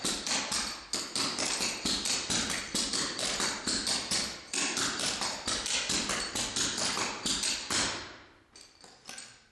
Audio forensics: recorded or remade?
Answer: recorded